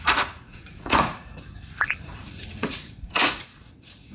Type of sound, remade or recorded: remade